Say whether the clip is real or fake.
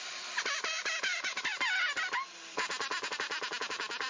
real